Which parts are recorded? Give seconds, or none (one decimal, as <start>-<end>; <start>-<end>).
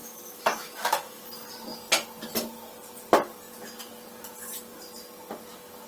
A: 1.2-5.9